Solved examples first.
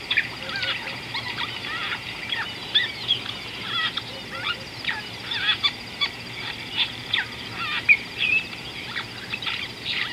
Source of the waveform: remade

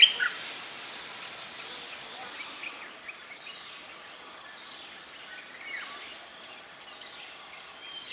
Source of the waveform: recorded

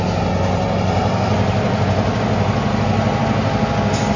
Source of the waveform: recorded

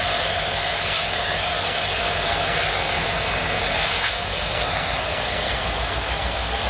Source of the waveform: remade